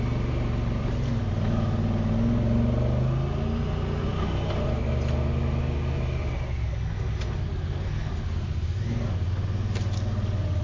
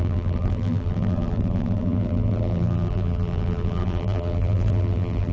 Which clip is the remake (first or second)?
second